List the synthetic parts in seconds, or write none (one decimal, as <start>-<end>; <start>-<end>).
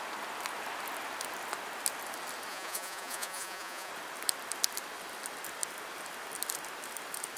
2.5-3.9